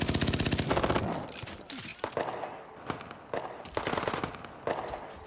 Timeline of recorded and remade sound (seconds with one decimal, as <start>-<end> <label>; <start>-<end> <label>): 0.0-5.3 recorded

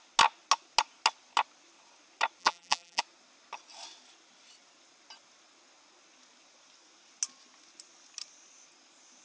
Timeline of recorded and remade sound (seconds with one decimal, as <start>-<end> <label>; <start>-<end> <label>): 0.0-2.4 recorded; 2.4-3.0 remade; 3.0-9.2 recorded

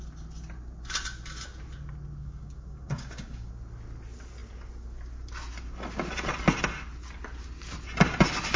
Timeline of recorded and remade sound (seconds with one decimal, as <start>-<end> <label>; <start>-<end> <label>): 0.0-2.2 recorded; 2.2-3.5 remade; 3.5-8.6 recorded

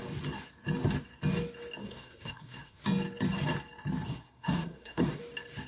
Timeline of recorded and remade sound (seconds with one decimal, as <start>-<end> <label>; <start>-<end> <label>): 0.0-1.8 recorded; 1.8-2.8 remade; 2.8-4.1 recorded; 4.1-5.2 remade; 5.2-5.7 recorded

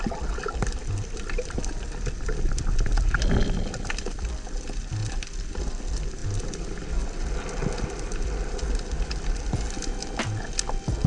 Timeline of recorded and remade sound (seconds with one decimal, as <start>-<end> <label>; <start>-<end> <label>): 0.0-5.0 recorded; 5.0-5.6 remade; 5.6-11.1 recorded